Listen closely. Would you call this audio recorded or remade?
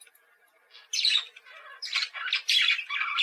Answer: recorded